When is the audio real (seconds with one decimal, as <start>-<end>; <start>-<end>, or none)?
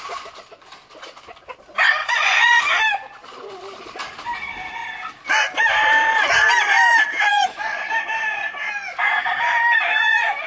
0.0-2.0; 2.6-7.3; 7.8-10.5